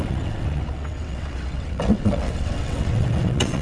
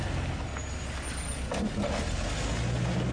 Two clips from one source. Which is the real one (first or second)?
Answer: second